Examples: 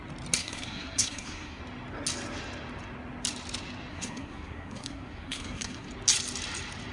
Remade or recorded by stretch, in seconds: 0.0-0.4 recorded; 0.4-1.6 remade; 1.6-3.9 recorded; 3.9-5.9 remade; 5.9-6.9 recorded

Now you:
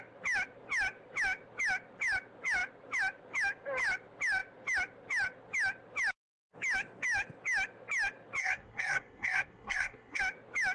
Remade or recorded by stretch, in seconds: 0.0-8.4 recorded; 8.4-10.2 remade; 10.2-10.7 recorded